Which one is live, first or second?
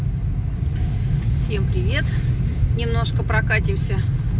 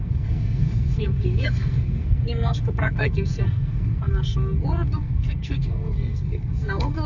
first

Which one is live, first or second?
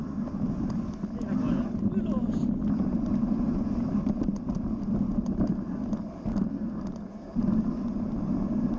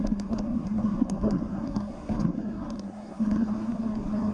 first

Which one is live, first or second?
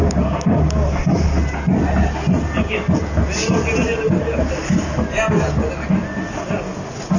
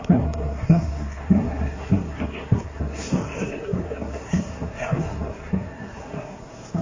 first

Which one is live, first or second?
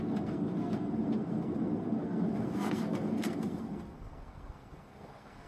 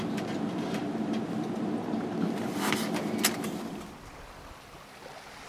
second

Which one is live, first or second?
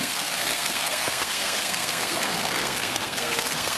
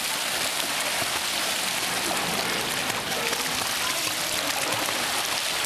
second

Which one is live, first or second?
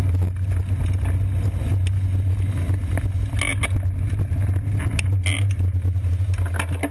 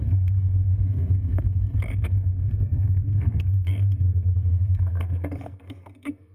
first